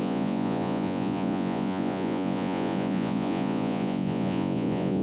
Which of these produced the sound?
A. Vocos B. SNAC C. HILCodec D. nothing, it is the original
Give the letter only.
A